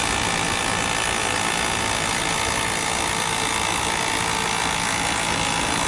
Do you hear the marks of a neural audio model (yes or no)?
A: no